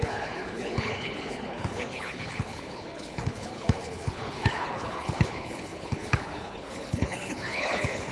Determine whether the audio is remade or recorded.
remade